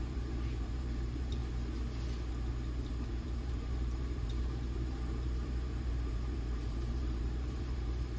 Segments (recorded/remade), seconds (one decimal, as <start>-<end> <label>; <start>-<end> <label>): 0.0-1.4 remade; 1.4-2.9 recorded; 2.9-8.2 remade